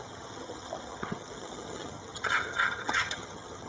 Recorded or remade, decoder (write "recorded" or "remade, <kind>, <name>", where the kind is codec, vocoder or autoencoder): remade, vocoder, HiFi-GAN